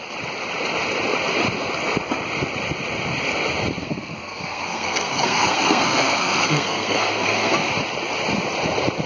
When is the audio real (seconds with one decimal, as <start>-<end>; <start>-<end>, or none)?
0.0-3.8; 7.7-9.1